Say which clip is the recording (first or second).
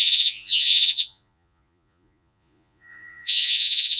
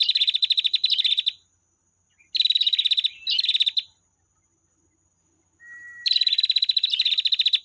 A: second